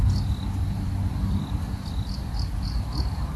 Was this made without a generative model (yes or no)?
yes